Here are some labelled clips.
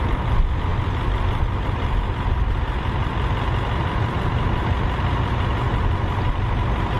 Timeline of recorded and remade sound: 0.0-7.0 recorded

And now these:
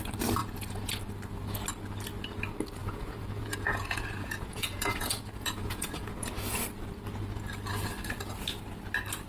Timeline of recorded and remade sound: 0.0-0.4 recorded; 0.4-1.0 remade; 1.0-2.8 recorded; 2.8-6.3 remade; 6.3-9.3 recorded

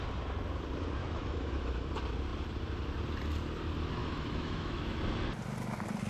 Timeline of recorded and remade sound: 0.0-1.0 recorded; 1.0-1.9 remade; 1.9-4.0 recorded; 4.0-5.0 remade; 5.0-6.1 recorded

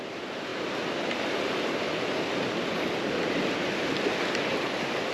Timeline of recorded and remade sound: 0.0-5.1 recorded

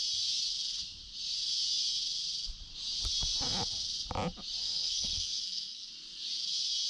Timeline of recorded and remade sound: 0.0-4.6 recorded; 4.6-5.9 remade; 5.9-6.9 recorded

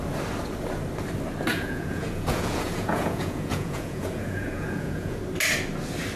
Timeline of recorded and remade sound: 0.0-1.5 recorded; 1.5-5.2 remade; 5.2-6.2 recorded